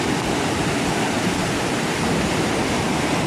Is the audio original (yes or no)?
yes